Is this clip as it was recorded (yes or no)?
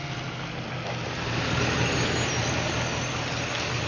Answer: yes